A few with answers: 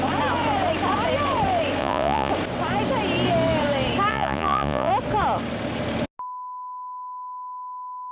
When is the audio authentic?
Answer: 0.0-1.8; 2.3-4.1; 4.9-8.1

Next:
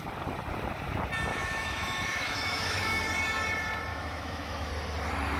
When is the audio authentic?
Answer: 0.0-1.3; 3.0-3.9; 4.7-5.4